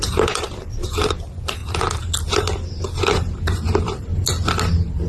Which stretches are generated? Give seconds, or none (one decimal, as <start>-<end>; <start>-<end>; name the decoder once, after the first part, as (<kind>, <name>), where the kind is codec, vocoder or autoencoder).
0.0-1.6 (vocoder, BigVGAN v2); 2.2-4.1